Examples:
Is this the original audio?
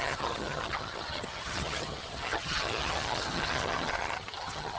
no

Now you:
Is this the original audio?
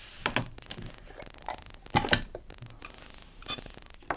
yes